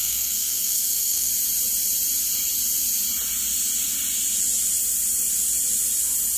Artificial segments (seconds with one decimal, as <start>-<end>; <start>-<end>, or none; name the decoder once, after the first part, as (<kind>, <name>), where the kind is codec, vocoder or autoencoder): 0.0-1.3 (codec, SNAC)